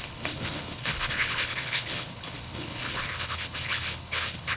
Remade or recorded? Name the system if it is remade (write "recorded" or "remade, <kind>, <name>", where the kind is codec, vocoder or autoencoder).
remade, codec, HILCodec